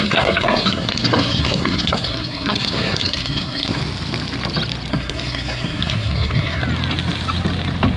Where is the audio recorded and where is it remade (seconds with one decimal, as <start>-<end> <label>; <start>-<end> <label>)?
0.0-3.8 remade; 3.8-4.9 recorded; 4.9-6.6 remade; 6.6-8.0 recorded